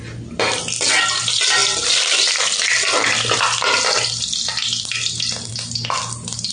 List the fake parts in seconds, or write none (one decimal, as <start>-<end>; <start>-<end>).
none